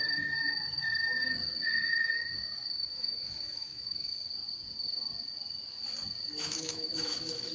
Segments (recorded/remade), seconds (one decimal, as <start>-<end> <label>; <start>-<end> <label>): 0.0-1.2 remade; 1.2-1.9 recorded; 1.9-4.1 remade; 4.1-6.4 recorded; 6.4-7.5 remade